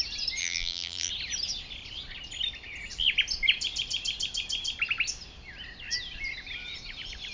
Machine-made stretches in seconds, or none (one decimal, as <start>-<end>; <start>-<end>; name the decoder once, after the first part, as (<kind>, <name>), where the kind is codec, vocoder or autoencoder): 0.4-1.1 (vocoder, BigVGAN v2)

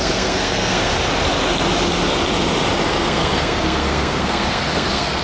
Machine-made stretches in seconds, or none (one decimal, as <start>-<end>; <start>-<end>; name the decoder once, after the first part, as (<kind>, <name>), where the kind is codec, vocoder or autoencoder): 0.0-0.9 (codec, SNAC); 2.9-5.2